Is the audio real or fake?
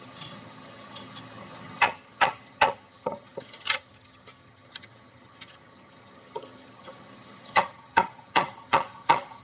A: fake